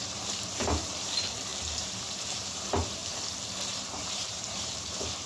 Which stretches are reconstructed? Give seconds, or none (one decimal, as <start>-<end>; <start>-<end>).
0.0-3.0; 3.7-5.3